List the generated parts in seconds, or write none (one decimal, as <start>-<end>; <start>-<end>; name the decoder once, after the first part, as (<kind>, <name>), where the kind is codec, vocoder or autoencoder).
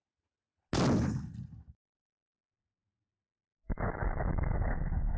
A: 3.6-5.2 (autoencoder, DAC-VAE)